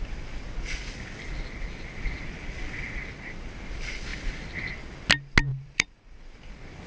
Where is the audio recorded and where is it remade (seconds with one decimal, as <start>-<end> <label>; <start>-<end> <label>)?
0.0-5.5 recorded; 5.5-6.2 remade; 6.2-6.9 recorded